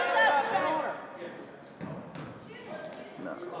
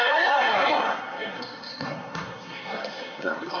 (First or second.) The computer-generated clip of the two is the second